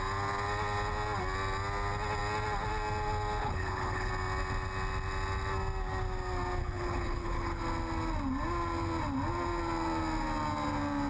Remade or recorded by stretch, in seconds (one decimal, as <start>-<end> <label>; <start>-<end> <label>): 0.0-3.4 recorded; 3.4-4.1 remade; 4.1-6.6 recorded; 6.6-7.6 remade; 7.6-11.1 recorded